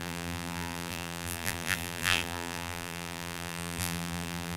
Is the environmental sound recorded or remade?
remade